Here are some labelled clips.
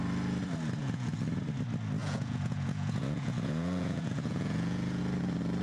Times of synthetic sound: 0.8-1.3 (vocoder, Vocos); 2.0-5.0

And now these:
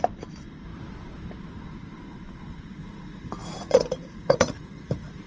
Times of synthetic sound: 2.8-5.3 (vocoder, Vocos)

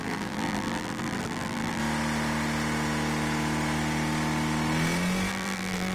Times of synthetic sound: 0.0-1.8 (vocoder, BigVGAN v2); 5.3-5.9

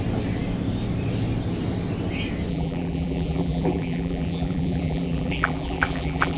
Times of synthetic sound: 2.5-6.4 (vocoder, BigVGAN v2)

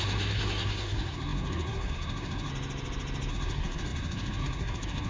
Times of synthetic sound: 0.0-2.5 (codec, SNAC); 3.3-5.1

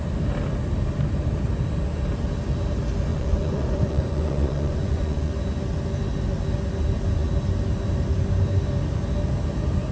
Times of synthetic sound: 3.1-5.3 (vocoder, Vocos)